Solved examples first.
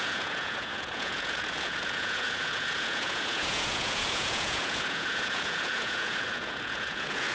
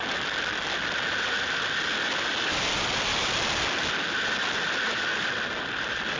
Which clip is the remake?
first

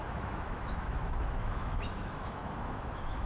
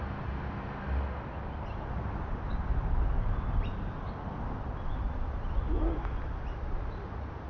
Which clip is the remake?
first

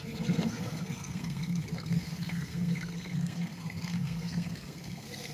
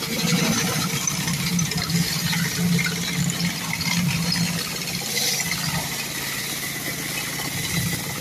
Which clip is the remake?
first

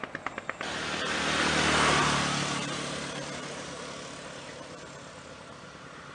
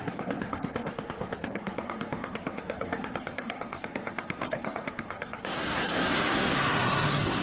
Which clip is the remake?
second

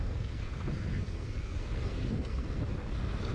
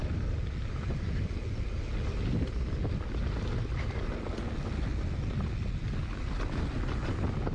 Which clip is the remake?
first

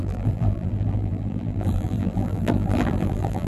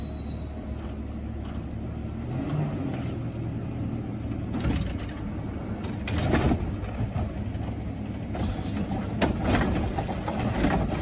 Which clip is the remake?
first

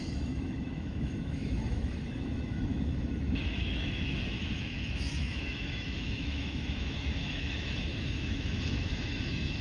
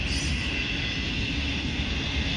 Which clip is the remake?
first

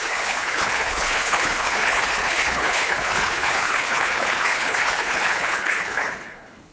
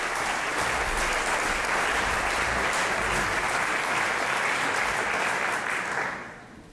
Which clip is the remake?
first